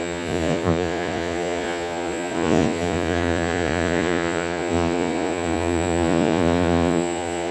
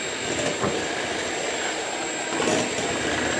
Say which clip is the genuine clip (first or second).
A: second